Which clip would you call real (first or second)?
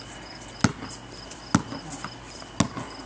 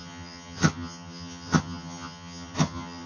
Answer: first